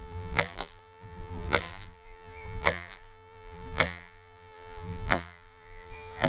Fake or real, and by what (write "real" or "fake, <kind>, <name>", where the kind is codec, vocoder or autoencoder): fake, vocoder, BigVGAN v2